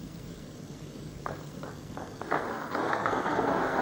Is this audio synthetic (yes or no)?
yes